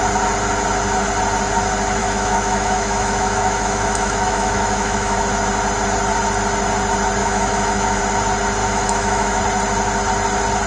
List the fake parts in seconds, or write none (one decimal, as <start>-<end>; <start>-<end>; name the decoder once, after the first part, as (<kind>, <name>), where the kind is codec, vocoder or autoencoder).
2.0-5.2 (autoencoder, DAC-VAE); 7.2-8.0; 8.6-9.4